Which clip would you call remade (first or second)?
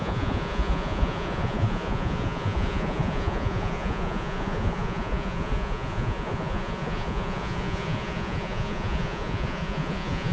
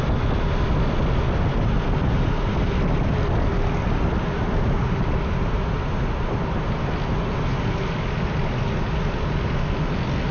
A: first